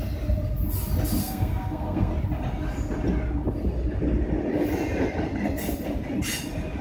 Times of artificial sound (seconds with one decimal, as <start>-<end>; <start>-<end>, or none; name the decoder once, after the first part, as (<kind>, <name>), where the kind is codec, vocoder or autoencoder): 1.2-2.1 (codec, SNAC)